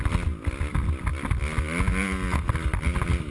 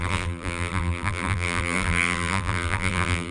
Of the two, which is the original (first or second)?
first